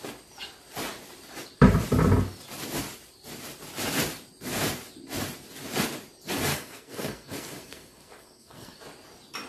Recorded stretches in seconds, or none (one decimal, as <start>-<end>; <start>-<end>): 0.0-6.5; 8.8-9.5